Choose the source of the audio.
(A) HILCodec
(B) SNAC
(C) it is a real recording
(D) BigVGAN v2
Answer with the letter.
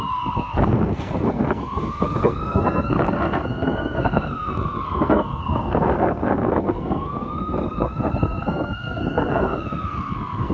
B